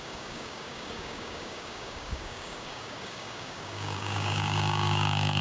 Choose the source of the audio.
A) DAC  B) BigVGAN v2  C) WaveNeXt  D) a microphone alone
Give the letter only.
A